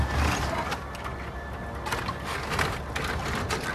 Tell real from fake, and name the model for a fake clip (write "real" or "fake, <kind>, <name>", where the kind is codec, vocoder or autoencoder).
real